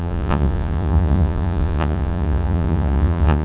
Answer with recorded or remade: remade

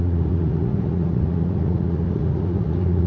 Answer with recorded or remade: remade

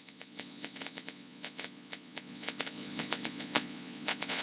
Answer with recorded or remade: remade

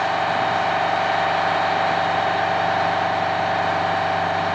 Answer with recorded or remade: recorded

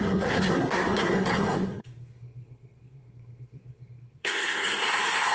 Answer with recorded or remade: remade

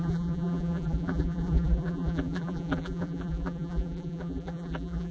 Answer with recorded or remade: remade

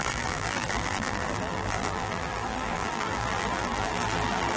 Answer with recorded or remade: remade